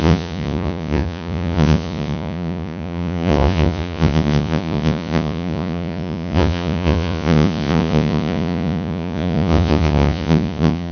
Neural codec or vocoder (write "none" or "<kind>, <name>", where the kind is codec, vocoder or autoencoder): vocoder, Vocos